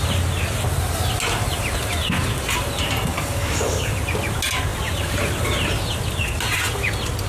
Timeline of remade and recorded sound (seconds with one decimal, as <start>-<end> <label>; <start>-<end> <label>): 0.0-3.1 recorded; 3.1-3.9 remade; 3.9-7.3 recorded